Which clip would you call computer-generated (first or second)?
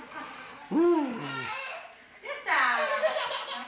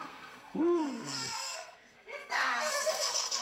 second